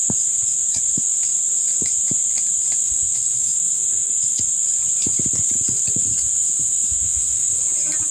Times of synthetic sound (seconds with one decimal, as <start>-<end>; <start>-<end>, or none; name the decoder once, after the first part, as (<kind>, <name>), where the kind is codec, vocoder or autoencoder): 2.8-4.4 (autoencoder, DAC-VAE); 6.7-7.6